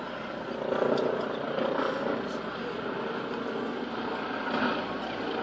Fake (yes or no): no